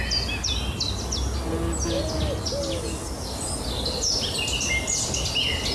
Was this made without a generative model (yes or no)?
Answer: yes